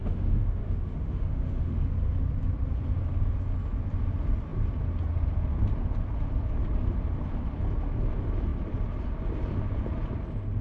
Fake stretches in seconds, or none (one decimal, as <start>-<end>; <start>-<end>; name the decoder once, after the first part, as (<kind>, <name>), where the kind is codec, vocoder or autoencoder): 0.0-1.8 (autoencoder, DAC-VAE)